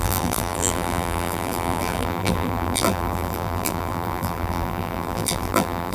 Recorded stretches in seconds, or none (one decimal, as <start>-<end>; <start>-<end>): none